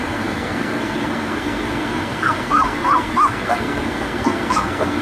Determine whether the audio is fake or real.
fake